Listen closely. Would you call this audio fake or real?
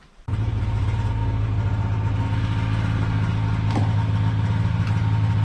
real